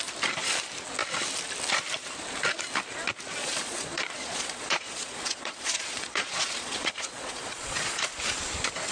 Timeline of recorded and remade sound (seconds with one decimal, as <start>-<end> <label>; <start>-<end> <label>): 0.0-3.4 recorded; 3.4-8.1 remade; 8.1-8.9 recorded